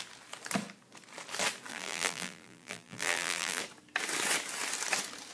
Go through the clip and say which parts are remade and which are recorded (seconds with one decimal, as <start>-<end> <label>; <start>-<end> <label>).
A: 0.0-1.7 recorded; 1.7-3.6 remade; 3.6-5.3 recorded